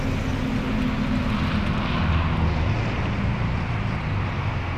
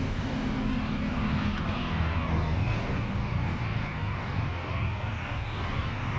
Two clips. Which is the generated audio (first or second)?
second